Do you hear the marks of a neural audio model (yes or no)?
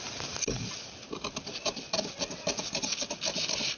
no